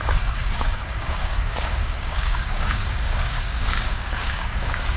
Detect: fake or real fake